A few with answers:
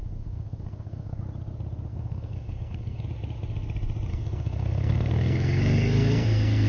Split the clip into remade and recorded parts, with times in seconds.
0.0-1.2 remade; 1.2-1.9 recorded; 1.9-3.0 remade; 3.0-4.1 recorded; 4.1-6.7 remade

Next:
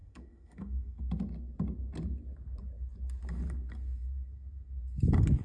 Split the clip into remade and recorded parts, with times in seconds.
0.0-1.0 remade; 1.0-5.4 recorded

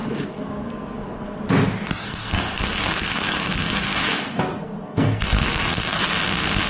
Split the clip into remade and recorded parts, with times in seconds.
0.0-1.4 remade; 1.4-2.0 recorded; 2.0-6.0 remade; 6.0-6.7 recorded

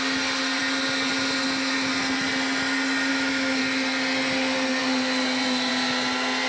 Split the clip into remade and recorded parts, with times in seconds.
0.0-3.1 recorded; 3.1-3.6 remade; 3.6-6.5 recorded

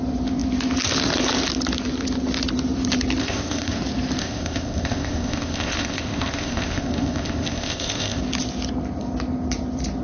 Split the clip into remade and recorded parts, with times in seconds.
0.0-3.2 recorded; 3.2-3.8 remade; 3.8-4.2 recorded; 4.2-8.2 remade; 8.2-10.0 recorded